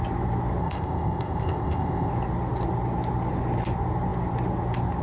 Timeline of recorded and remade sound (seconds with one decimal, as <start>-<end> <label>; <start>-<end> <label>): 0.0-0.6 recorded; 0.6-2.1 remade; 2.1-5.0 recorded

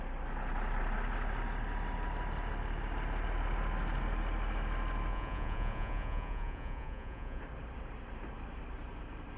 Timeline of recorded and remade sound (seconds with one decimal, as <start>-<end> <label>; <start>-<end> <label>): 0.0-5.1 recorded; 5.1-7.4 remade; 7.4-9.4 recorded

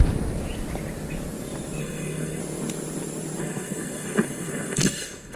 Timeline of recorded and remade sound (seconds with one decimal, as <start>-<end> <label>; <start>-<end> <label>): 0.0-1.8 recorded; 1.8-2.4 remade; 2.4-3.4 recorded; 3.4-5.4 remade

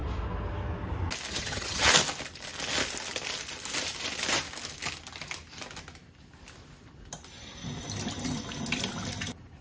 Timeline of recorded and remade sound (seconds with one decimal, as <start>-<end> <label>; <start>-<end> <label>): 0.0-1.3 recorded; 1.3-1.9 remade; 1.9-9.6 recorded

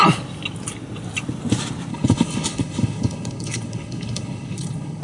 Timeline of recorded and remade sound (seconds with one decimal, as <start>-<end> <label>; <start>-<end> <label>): 0.0-1.9 recorded; 1.9-5.0 remade